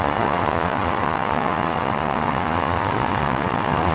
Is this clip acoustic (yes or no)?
no